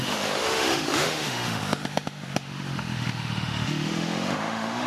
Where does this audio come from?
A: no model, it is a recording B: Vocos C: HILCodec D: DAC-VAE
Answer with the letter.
D